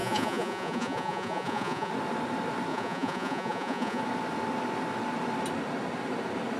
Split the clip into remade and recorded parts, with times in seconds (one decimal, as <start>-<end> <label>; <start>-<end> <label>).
0.0-1.9 remade; 1.9-2.7 recorded; 2.7-4.0 remade; 4.0-6.6 recorded